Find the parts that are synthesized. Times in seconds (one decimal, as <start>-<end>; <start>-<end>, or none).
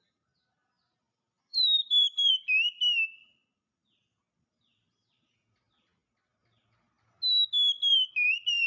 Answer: 1.5-2.3; 7.9-8.7